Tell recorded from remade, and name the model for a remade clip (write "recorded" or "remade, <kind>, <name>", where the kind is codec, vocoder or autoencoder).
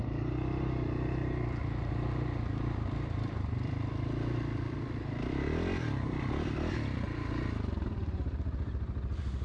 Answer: remade, vocoder, BigVGAN v2